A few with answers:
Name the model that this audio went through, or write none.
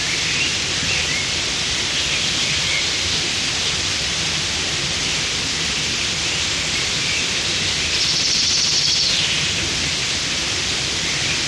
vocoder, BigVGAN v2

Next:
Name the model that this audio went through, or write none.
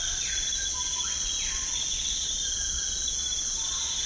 vocoder, Vocos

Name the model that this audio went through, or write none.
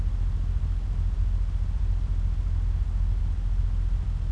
none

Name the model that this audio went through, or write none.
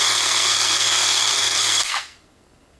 codec, SNAC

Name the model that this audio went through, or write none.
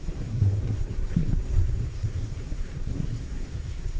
codec, SNAC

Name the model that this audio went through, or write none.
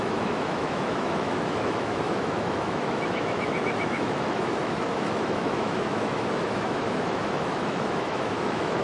autoencoder, DAC-VAE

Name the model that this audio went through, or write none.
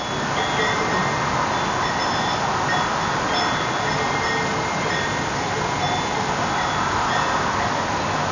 none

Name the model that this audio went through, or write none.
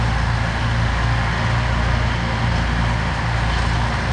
none